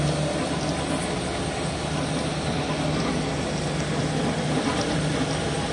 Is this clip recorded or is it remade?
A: recorded